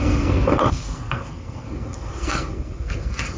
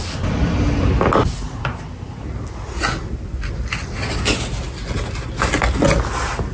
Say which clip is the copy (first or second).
first